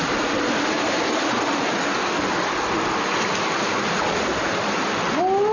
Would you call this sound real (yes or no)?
yes